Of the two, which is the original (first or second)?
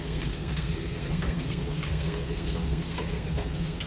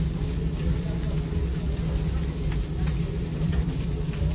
second